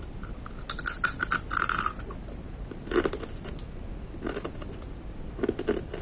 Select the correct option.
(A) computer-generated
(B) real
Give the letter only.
B